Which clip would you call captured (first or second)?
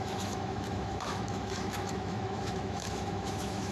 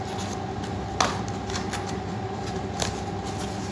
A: second